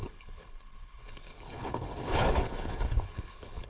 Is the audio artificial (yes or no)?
yes